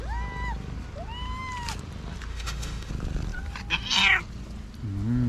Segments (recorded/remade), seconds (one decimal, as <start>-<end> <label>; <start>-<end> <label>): 0.0-2.3 recorded; 2.3-2.9 remade; 2.9-5.3 recorded